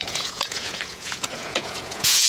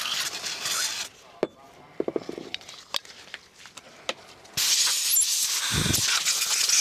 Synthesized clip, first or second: first